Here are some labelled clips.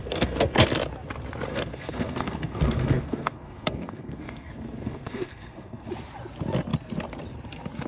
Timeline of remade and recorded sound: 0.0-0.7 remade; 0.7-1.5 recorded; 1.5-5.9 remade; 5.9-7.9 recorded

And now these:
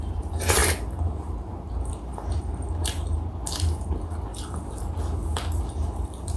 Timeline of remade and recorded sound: 0.0-6.4 remade

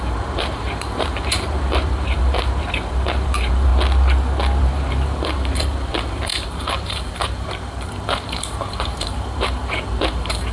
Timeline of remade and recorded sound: 0.0-3.7 remade; 3.7-4.6 recorded; 4.6-10.5 remade

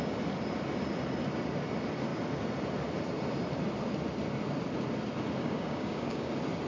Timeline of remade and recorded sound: 0.0-5.4 recorded; 5.4-6.3 remade; 6.3-6.7 recorded

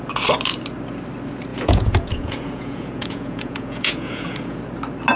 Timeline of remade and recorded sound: 0.0-1.5 recorded; 1.5-4.6 remade; 4.6-5.2 recorded

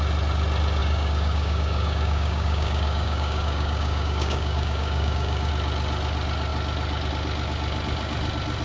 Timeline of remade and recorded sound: 0.0-0.8 recorded; 0.8-5.5 remade; 5.5-8.6 recorded

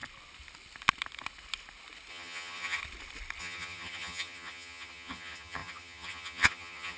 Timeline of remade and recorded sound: 0.0-2.1 recorded; 2.1-2.8 remade; 2.8-3.4 recorded; 3.4-7.0 remade

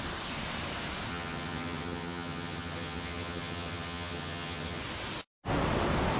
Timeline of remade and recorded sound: 0.0-1.1 recorded; 1.1-4.8 remade; 4.8-6.2 recorded